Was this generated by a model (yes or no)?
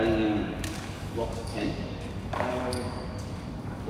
yes